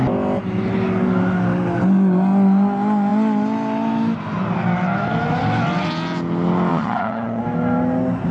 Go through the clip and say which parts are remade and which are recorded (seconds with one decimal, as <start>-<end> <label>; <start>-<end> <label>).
0.0-6.7 recorded; 6.7-7.4 remade; 7.4-8.3 recorded